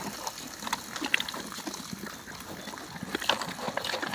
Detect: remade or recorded recorded